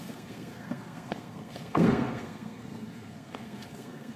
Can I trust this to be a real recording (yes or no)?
no